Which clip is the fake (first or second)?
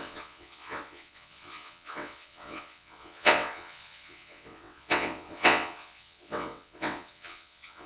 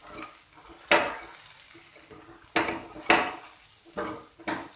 first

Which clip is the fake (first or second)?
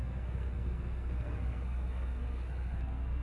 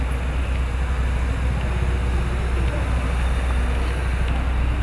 first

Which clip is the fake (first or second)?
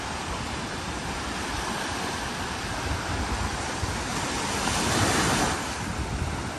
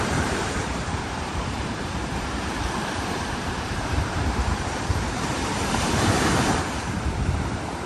second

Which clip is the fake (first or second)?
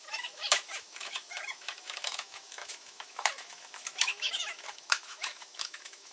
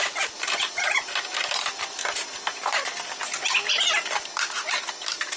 first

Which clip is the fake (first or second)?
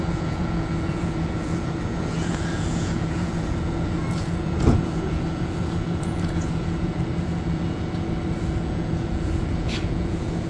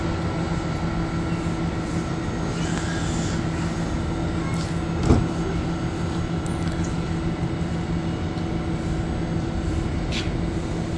first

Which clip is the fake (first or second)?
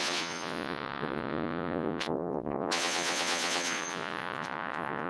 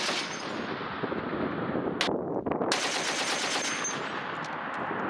first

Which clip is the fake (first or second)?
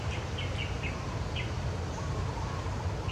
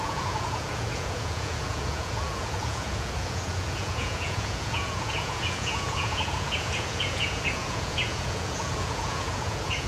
second